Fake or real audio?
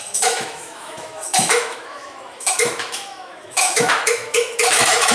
fake